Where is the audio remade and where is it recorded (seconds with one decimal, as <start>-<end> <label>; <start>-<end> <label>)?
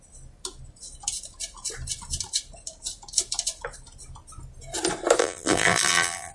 0.0-5.2 recorded; 5.2-6.3 remade